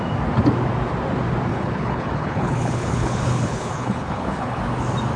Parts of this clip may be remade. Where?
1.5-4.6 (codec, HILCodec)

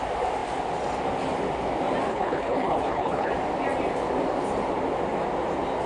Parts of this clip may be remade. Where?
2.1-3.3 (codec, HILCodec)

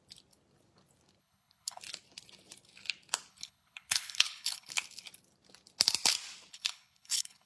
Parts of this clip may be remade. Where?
1.2-1.8 (codec, HILCodec); 3.3-4.7; 6.5-7.5